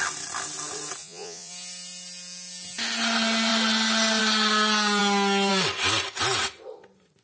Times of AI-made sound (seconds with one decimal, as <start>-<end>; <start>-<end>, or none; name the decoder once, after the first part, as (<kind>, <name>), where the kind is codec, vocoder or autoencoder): 1.0-1.5 (vocoder, Vocos)